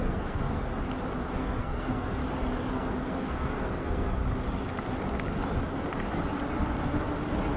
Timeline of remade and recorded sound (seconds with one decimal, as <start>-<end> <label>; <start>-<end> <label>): 0.0-0.7 remade; 0.7-1.3 recorded; 1.3-2.2 remade; 2.2-2.7 recorded; 2.7-4.2 remade; 4.2-7.6 recorded